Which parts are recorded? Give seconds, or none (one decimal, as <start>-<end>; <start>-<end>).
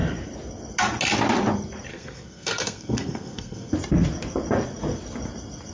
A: 0.0-1.9; 3.7-5.7